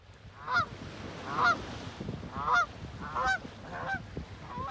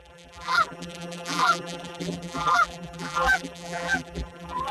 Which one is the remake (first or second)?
second